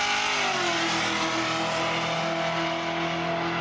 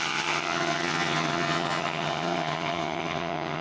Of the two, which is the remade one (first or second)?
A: second